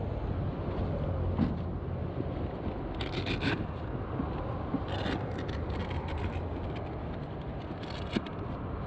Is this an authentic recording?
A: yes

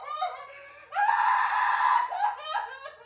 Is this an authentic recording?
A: yes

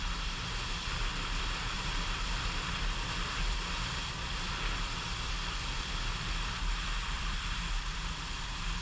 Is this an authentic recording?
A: no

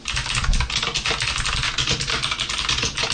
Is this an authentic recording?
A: yes